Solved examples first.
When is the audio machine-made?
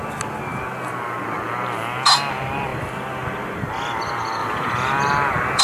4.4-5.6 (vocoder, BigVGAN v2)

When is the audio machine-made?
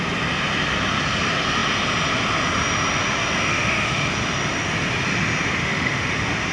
3.5-4.1 (autoencoder, DAC-VAE); 5.6-6.1